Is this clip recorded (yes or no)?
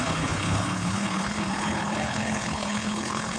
no